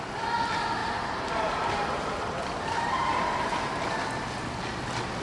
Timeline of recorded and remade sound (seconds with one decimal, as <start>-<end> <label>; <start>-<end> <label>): 0.0-0.8 recorded; 0.8-3.7 remade; 3.7-5.2 recorded